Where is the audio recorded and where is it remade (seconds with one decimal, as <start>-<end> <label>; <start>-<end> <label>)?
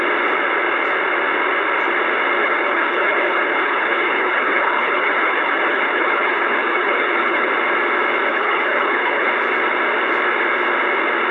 0.0-2.4 recorded; 2.4-7.5 remade; 7.5-8.3 recorded; 8.3-9.3 remade; 9.3-11.3 recorded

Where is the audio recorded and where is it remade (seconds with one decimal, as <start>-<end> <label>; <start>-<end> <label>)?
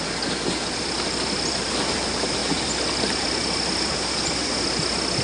0.0-5.2 recorded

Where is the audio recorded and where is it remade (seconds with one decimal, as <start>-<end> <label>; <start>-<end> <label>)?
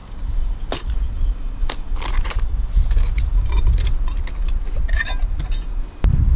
0.0-6.4 recorded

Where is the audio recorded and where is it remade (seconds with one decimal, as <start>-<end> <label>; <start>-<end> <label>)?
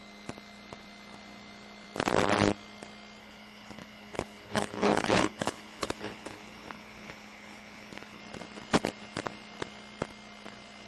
0.0-3.2 recorded; 3.2-8.2 remade; 8.2-10.9 recorded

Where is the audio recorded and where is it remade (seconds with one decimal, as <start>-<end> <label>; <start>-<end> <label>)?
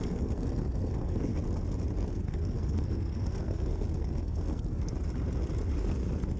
0.0-1.3 remade; 1.3-2.1 recorded; 2.1-4.9 remade; 4.9-5.8 recorded; 5.8-6.4 remade